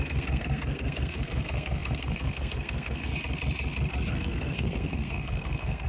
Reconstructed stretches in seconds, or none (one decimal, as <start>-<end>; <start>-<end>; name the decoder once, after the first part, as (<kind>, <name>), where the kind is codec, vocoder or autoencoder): 0.0-3.1 (codec, SNAC); 4.1-5.9